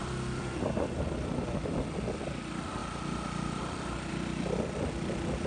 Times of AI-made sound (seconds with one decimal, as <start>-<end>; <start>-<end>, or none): none

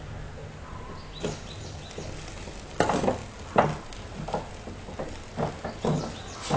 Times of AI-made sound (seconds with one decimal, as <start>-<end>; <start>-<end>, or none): none

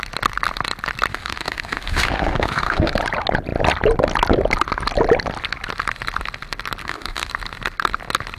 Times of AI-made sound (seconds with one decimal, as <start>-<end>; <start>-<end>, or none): 1.1-2.9; 6.8-7.3

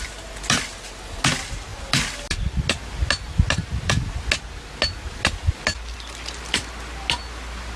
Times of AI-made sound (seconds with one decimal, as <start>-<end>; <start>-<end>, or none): none